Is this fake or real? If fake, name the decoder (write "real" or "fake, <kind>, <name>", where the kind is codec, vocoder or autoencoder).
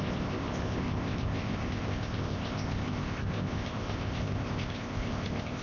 fake, codec, ZipCodec